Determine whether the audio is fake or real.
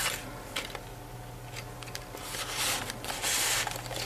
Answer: real